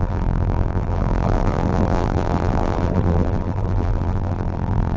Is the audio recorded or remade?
remade